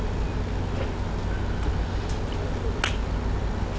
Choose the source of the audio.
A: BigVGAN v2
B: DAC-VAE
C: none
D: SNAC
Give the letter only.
C